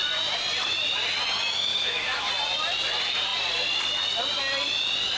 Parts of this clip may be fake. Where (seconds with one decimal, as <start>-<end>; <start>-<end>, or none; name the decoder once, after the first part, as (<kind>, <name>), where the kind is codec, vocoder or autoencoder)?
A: 1.7-2.3 (autoencoder, DAC-VAE)

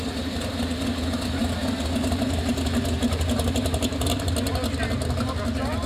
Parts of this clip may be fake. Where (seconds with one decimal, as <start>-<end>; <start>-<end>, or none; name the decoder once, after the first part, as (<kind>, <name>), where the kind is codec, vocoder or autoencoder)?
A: none